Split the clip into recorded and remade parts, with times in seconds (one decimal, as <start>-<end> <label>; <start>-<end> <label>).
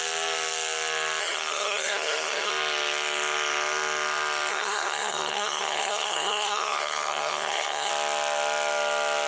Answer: 0.0-1.2 recorded; 1.2-2.5 remade; 2.5-4.5 recorded; 4.5-7.9 remade; 7.9-9.3 recorded